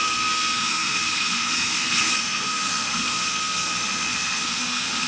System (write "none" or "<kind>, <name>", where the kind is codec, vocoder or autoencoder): codec, SNAC